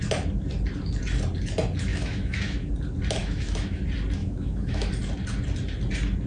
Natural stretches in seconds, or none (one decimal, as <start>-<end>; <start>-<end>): 0.0-1.9; 2.7-3.2; 3.8-4.2; 4.9-6.3